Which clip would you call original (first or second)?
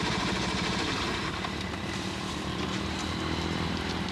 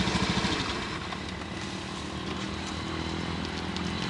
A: second